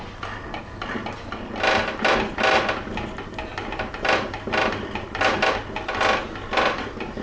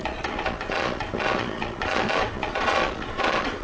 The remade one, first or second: second